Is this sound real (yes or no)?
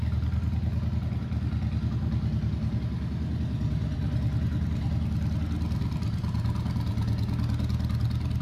yes